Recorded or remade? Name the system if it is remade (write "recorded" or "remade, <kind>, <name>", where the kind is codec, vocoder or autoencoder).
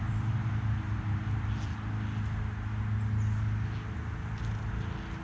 recorded